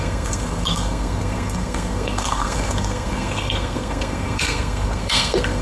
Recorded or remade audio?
remade